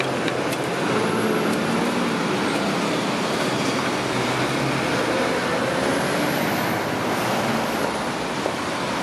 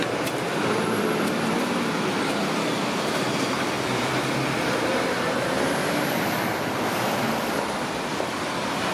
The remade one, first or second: second